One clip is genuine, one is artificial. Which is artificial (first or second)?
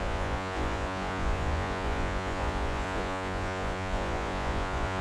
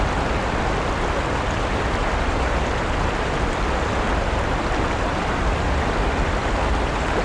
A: first